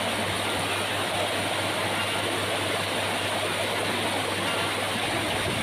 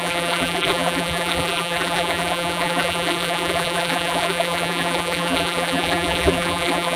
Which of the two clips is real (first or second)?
first